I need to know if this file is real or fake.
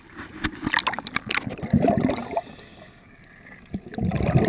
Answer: real